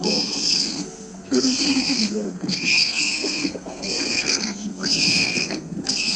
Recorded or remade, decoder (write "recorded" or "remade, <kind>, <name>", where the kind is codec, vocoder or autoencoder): remade, codec, SNAC